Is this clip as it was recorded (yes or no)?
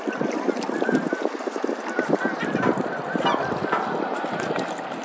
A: yes